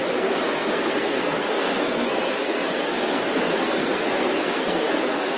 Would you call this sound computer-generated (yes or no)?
yes